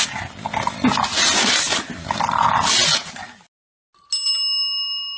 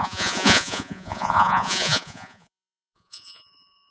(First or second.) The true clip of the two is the first